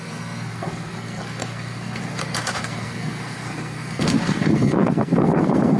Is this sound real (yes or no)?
no